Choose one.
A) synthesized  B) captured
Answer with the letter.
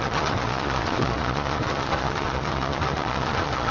A